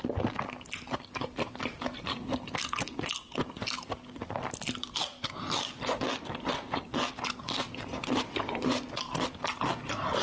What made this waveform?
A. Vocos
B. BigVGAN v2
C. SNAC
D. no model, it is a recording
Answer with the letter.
D